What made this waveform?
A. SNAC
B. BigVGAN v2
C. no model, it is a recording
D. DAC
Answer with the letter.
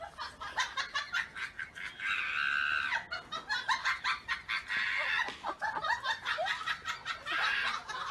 C